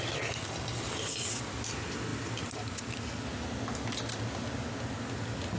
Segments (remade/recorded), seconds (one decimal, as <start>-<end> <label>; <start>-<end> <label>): 0.0-5.6 recorded